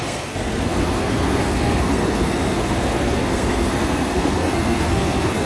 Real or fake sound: fake